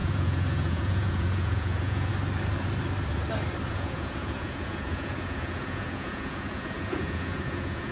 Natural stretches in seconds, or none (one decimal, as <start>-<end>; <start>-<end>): 2.1-3.7